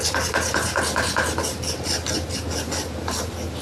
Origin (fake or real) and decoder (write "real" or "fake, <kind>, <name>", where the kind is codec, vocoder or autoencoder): real